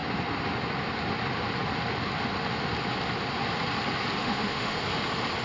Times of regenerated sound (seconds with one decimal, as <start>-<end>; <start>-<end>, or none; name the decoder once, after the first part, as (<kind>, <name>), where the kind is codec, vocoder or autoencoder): 4.2-4.8 (autoencoder, DAC-VAE)